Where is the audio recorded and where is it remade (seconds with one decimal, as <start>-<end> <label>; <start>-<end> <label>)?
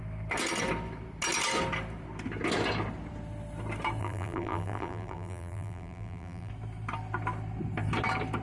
0.0-4.0 recorded; 4.0-6.5 remade; 6.5-8.4 recorded